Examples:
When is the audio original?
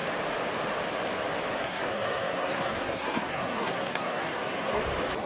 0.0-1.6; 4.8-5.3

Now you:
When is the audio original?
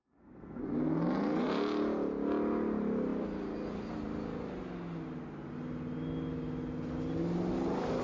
0.6-8.0